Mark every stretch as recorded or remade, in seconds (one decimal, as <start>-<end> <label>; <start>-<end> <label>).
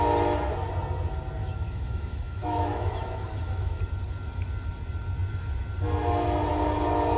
0.0-1.4 recorded; 1.4-3.8 remade; 3.8-7.2 recorded